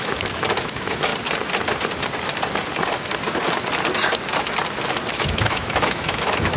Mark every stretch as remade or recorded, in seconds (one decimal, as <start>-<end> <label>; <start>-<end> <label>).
0.0-1.1 remade; 1.1-5.1 recorded; 5.1-6.6 remade